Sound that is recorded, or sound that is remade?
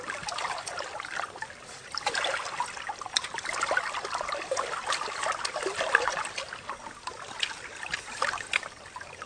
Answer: recorded